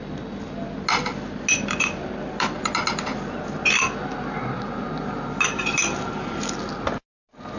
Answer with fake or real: real